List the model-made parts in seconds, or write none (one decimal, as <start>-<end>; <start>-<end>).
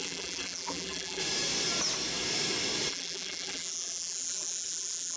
0.0-1.2; 2.9-5.2